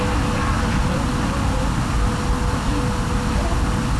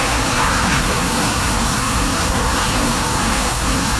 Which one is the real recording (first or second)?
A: first